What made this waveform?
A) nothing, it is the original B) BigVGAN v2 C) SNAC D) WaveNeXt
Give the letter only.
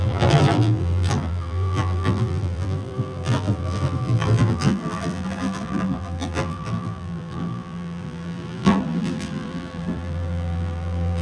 B